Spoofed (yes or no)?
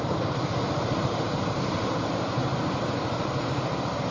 no